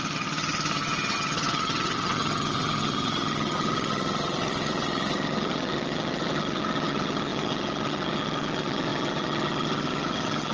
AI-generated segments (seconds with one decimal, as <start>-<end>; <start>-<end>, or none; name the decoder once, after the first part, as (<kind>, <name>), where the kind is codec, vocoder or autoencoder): 0.0-10.5 (vocoder, HiFi-GAN)